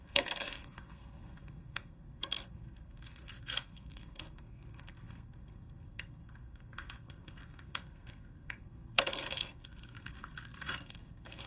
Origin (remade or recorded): remade